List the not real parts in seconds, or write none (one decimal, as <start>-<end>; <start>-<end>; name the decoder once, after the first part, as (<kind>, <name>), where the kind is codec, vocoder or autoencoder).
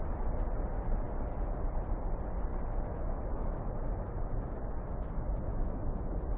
2.5-6.4 (autoencoder, DAC-VAE)